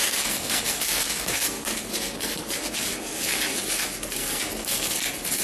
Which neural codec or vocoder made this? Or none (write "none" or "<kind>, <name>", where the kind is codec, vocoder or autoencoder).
codec, SNAC